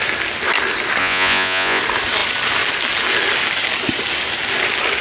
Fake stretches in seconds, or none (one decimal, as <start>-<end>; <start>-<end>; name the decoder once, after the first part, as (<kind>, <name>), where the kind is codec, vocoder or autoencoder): 1.0-1.8 (vocoder, Vocos)